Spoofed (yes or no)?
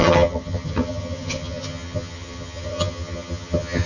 yes